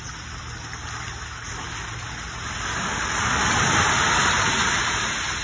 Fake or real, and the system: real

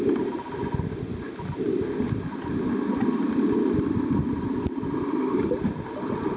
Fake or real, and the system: real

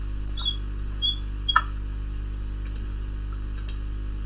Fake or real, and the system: real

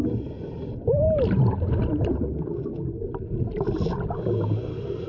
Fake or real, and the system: real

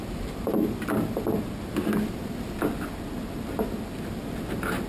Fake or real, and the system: real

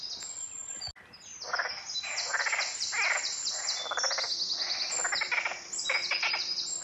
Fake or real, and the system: real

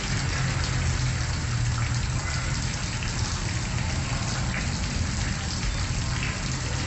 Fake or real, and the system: real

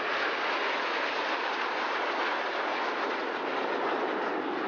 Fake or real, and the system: real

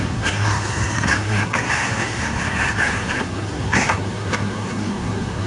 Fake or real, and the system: fake, codec, SNAC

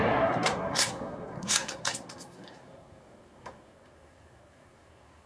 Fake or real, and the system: fake, codec, SNAC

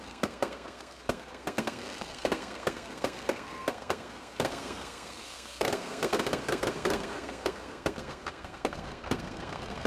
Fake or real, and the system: fake, codec, SNAC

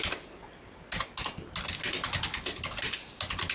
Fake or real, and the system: real